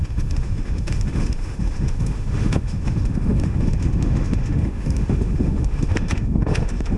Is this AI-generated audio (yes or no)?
yes